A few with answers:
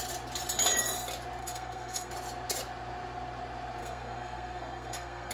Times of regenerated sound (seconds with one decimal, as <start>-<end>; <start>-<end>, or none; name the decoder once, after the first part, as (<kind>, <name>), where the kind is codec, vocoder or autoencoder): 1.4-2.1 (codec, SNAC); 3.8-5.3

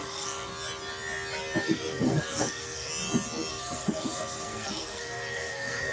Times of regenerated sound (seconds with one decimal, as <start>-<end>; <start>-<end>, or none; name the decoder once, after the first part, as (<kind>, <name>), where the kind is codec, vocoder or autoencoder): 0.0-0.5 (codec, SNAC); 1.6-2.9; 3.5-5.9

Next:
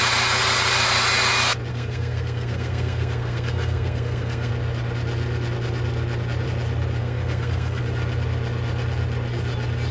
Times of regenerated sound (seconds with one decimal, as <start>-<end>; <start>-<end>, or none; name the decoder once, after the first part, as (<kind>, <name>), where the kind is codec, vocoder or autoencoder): 1.7-4.5 (codec, SNAC); 7.0-7.8

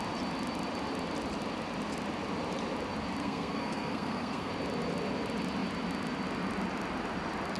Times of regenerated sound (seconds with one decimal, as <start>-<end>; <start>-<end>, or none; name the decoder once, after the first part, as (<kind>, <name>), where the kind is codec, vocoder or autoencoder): 3.2-4.5 (codec, SNAC)